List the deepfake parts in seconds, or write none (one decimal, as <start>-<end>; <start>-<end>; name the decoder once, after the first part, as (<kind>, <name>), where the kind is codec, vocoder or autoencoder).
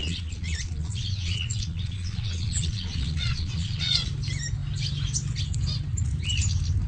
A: 0.0-4.1 (vocoder, Vocos)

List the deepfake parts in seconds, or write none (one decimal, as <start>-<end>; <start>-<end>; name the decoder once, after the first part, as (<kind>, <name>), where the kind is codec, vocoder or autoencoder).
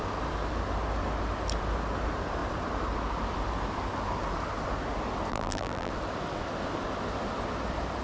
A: 5.3-5.9 (vocoder, BigVGAN v2)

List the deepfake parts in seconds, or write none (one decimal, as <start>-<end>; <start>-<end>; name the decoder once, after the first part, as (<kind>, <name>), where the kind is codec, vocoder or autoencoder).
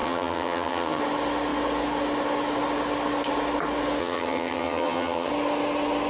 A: 0.0-1.0 (vocoder, HiFi-GAN); 4.0-5.3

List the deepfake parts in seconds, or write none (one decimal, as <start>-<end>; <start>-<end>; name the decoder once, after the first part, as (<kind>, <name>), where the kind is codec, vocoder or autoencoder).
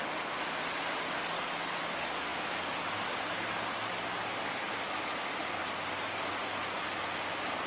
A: none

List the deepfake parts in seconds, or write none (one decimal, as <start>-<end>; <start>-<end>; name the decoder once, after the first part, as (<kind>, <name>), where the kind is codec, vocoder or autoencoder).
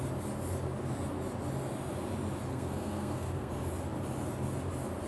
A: 2.5-3.5 (codec, SNAC)